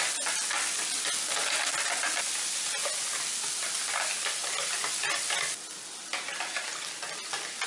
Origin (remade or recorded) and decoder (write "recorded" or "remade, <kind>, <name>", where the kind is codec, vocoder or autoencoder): recorded